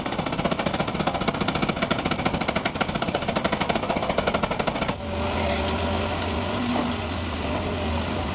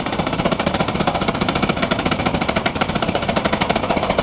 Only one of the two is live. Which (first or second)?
first